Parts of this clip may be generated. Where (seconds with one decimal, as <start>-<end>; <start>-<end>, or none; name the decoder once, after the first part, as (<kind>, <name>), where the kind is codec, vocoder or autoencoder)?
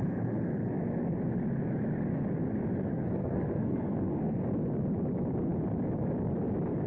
2.9-4.4 (codec, SNAC)